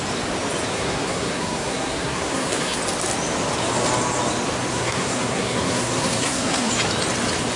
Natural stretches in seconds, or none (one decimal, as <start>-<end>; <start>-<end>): 0.0-0.7; 2.8-4.7; 6.7-7.6

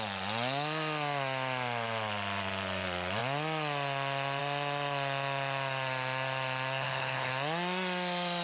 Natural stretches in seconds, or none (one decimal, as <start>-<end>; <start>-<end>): 0.0-6.8; 7.3-8.4

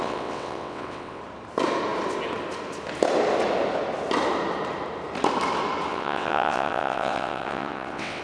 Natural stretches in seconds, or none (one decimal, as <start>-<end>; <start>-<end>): 1.2-5.9

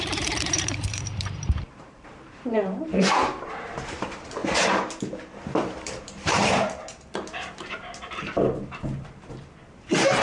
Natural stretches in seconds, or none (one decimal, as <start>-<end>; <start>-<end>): none

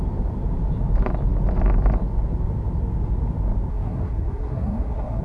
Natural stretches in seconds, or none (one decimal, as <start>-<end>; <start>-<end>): 0.0-3.7

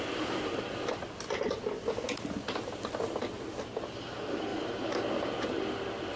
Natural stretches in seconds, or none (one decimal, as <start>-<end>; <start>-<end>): 4.5-5.1

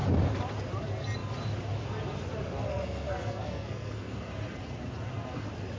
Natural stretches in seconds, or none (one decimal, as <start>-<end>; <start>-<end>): 0.0-2.7; 4.3-5.8

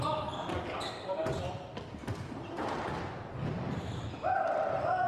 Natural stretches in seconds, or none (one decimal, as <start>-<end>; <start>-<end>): 0.0-5.1